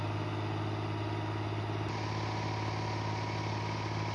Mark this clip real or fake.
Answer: real